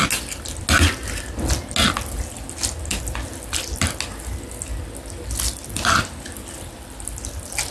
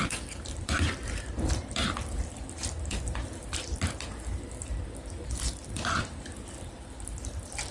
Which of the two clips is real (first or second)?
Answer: first